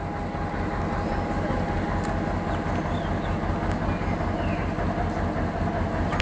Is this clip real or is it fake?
real